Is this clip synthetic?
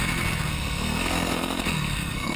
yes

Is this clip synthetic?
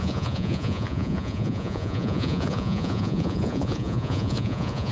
yes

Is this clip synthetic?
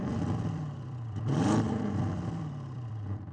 yes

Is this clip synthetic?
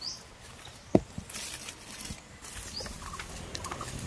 no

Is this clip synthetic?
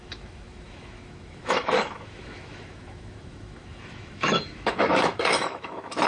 yes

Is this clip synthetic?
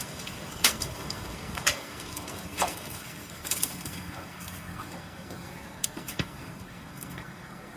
yes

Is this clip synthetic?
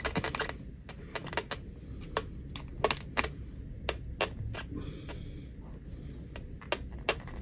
no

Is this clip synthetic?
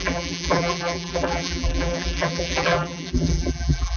yes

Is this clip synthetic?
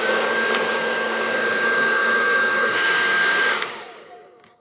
yes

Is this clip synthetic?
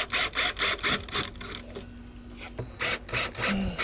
no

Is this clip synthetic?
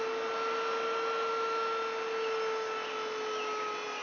no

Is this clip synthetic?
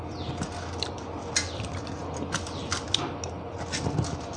no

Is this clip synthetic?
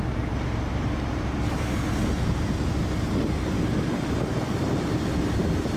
no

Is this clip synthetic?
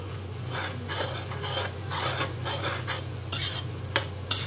yes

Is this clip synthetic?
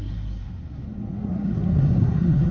yes